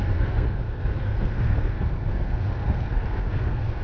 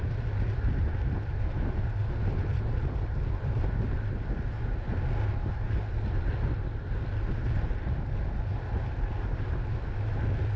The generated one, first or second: first